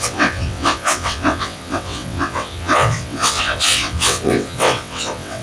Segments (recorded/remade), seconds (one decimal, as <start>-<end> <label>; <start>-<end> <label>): 0.0-5.4 remade